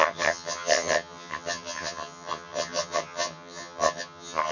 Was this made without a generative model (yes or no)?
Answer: no